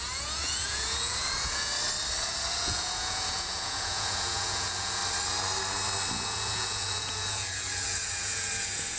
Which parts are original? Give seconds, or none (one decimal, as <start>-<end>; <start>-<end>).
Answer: 1.7-2.2; 5.0-6.1